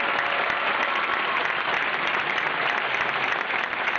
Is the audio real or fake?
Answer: real